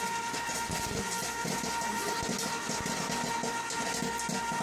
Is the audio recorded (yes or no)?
yes